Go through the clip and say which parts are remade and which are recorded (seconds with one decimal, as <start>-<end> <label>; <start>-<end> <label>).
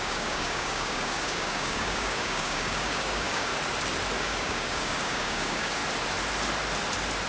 0.0-3.5 remade; 3.5-4.2 recorded; 4.2-5.8 remade; 5.8-7.3 recorded